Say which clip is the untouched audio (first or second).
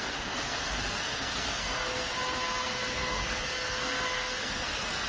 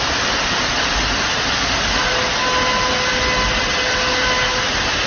second